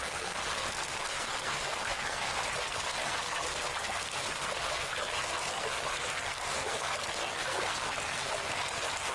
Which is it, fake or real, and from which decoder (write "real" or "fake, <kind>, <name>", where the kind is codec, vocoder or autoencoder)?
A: fake, codec, SNAC